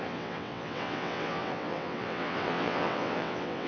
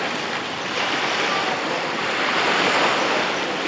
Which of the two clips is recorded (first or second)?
second